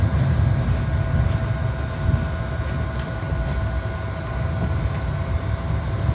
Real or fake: real